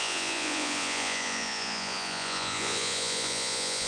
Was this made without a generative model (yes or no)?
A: no